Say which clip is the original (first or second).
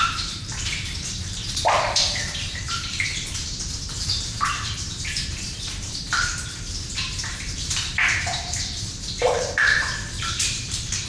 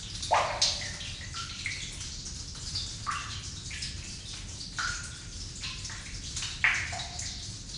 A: second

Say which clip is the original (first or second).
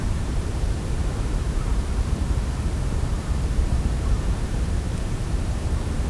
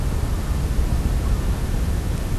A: second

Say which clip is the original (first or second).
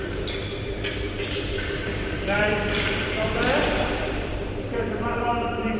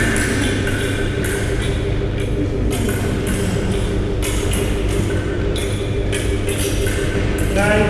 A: second